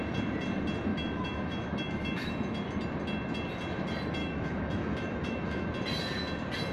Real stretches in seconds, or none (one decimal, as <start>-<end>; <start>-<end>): 0.0-0.9; 2.3-4.2; 5.7-6.7